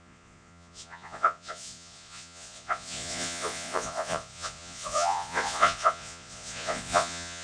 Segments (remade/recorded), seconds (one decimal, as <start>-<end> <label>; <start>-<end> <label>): 0.0-7.4 remade